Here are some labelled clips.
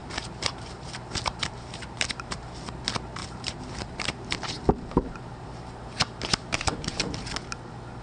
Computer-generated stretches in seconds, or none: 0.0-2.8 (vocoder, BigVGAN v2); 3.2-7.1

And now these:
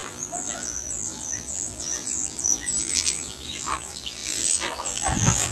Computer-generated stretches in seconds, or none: 0.0-5.5 (vocoder, BigVGAN v2)

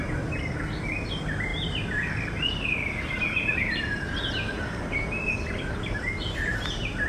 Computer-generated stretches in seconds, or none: 1.5-5.8 (vocoder, BigVGAN v2)